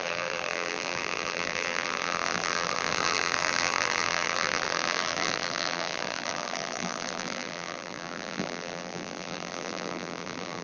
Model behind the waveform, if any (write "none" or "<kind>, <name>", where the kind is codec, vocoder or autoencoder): vocoder, BigVGAN v2